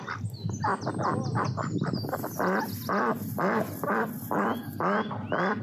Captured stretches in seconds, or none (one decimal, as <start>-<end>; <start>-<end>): 0.0-5.6